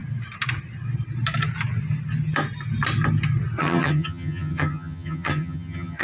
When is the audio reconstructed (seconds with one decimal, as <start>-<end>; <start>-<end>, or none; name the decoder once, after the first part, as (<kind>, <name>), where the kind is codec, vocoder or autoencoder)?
3.6-6.0 (vocoder, HiFi-GAN)

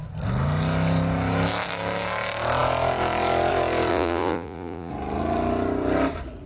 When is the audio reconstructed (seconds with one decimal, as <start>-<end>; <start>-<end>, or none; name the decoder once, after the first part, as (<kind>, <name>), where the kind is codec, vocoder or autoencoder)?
3.9-4.9 (vocoder, Vocos)

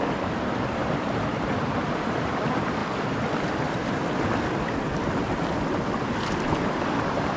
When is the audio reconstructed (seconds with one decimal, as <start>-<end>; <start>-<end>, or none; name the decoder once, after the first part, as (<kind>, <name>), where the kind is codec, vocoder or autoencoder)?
0.0-2.8 (vocoder, BigVGAN v2); 6.7-7.4

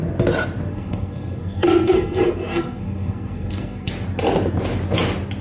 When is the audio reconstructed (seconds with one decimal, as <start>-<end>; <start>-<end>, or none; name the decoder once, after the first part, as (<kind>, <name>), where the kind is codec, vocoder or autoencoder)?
0.7-3.9 (codec, SNAC)

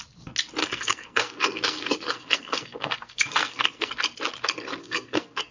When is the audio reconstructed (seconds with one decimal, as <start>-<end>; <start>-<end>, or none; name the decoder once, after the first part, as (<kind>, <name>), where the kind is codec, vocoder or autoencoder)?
0.6-3.9 (codec, SNAC); 4.8-5.5

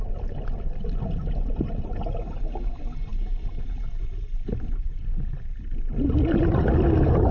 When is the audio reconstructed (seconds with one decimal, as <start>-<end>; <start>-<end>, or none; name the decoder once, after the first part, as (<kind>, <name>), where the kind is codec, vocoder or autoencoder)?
none

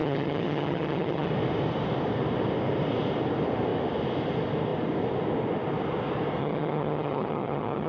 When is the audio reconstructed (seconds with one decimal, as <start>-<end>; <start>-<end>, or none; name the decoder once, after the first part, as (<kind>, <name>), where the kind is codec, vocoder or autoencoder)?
0.0-1.3 (vocoder, HiFi-GAN); 6.4-7.9